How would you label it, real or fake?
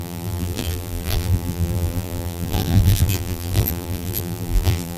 fake